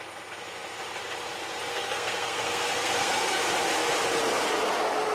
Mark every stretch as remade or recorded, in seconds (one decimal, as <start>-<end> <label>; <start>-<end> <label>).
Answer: 0.0-1.7 recorded; 1.7-3.4 remade; 3.4-5.1 recorded